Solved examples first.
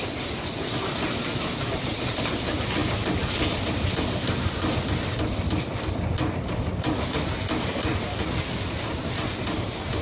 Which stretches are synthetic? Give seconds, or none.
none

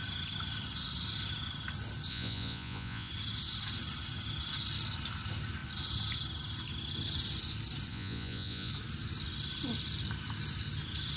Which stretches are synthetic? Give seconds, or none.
2.1-3.1 (vocoder, Vocos); 7.9-8.7

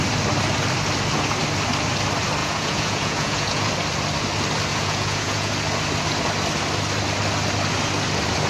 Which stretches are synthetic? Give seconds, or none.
2.4-3.7 (vocoder, Vocos); 4.7-5.5

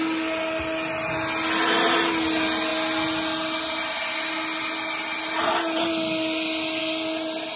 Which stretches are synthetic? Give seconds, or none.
none

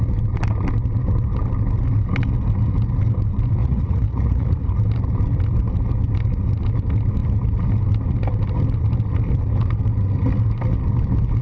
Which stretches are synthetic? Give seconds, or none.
3.6-4.6 (vocoder, Vocos)

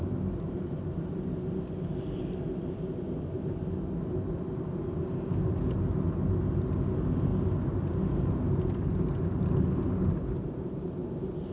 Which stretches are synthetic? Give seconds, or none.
none